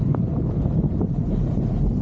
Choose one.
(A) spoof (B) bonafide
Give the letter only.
B